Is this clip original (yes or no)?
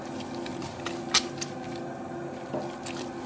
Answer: yes